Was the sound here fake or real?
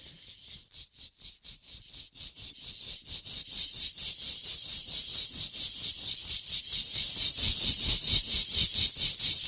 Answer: real